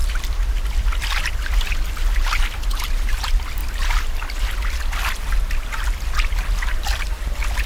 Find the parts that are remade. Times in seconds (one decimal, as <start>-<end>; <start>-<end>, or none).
none